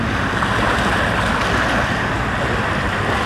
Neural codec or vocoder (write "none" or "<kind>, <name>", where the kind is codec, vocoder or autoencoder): none